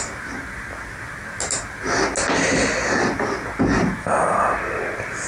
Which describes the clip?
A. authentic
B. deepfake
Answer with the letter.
A